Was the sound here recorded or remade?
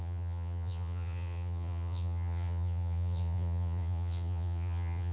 remade